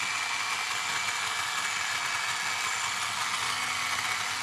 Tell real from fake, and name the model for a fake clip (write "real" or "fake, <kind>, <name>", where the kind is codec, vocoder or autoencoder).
real